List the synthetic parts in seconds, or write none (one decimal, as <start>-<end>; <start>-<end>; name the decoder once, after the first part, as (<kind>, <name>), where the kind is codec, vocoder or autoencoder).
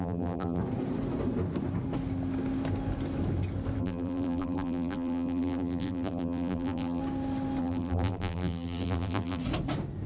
0.0-0.6 (vocoder, BigVGAN v2); 3.8-7.0; 7.6-9.4